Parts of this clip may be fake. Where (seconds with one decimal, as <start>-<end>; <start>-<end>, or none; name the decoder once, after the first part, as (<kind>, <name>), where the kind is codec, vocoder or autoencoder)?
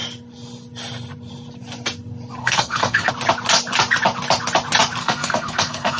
2.4-3.1 (codec, SNAC); 5.0-6.0